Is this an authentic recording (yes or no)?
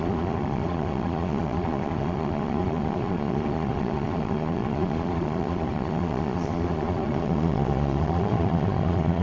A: no